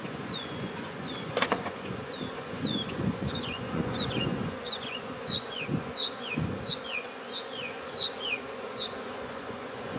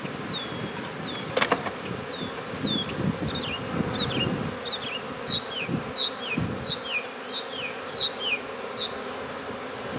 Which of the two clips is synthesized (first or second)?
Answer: first